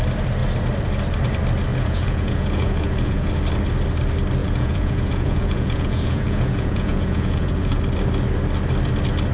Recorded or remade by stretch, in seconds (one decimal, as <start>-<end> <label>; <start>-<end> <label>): 0.0-1.7 recorded; 1.7-3.3 remade; 3.3-4.4 recorded; 4.4-7.8 remade; 7.8-9.3 recorded